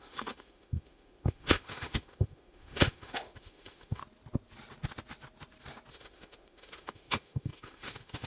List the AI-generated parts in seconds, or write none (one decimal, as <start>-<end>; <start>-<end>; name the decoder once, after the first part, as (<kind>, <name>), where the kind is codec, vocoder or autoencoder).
0.0-4.0 (autoencoder, DAC-VAE); 5.9-8.3